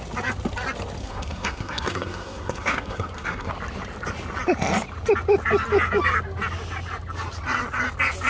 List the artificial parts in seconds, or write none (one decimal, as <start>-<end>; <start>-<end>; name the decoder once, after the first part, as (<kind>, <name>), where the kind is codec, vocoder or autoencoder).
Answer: 1.0-3.5 (codec, SNAC)